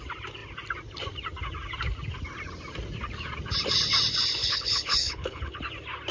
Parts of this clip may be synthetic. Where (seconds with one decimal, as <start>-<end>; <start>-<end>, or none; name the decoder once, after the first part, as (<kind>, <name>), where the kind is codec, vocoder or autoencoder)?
4.4-5.6 (codec, HILCodec)